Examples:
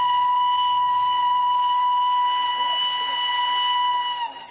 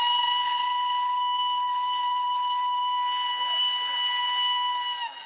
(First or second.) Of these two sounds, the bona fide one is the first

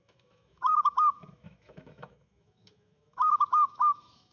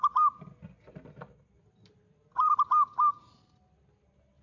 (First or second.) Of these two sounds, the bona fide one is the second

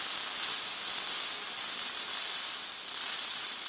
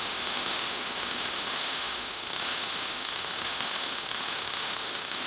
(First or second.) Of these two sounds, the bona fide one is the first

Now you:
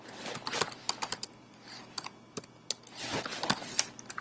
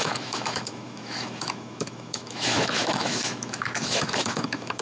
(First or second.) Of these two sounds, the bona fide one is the first